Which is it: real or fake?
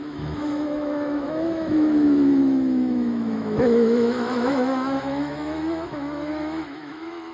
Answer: fake